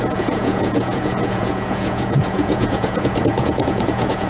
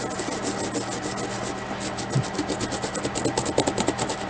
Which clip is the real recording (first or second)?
second